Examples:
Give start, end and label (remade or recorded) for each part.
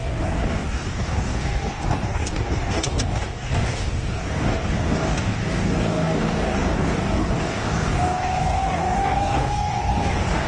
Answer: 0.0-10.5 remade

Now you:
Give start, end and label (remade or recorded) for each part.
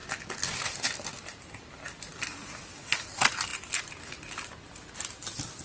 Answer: 0.0-5.6 recorded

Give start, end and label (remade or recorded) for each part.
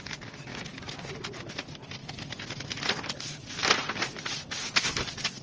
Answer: 0.0-0.5 recorded; 0.5-1.1 remade; 1.1-5.4 recorded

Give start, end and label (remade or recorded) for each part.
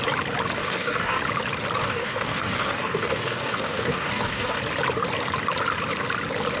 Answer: 0.0-0.6 recorded; 0.6-1.2 remade; 1.2-1.8 recorded; 1.8-4.6 remade; 4.6-6.6 recorded